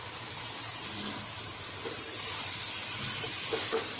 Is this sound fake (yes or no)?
no